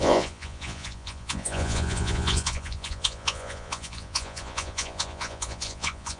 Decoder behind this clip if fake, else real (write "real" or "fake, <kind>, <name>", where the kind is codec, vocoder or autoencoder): fake, vocoder, Vocos